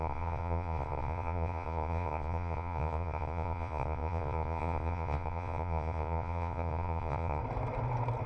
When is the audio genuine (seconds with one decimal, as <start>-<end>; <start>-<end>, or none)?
7.4-8.3